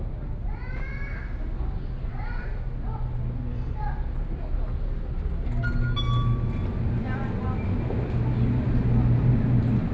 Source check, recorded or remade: recorded